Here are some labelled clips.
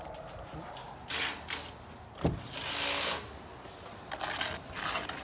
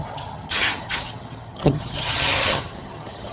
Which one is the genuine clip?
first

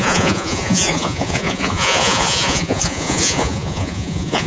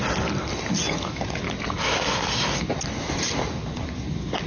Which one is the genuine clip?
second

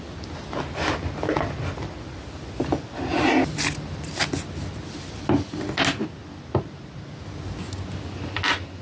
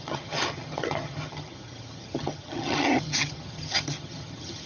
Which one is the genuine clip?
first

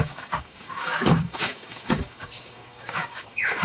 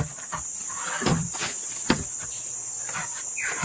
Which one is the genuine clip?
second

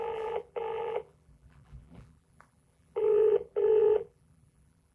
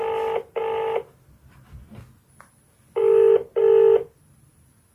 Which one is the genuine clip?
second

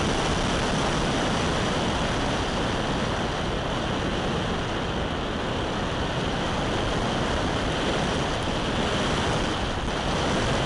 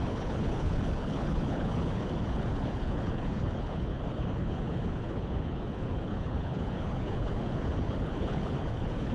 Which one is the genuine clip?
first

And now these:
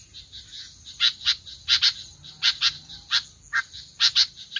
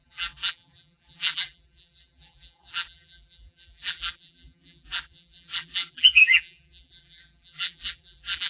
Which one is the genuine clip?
first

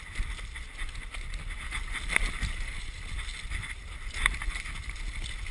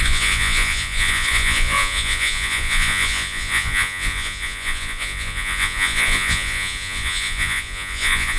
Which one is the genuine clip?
first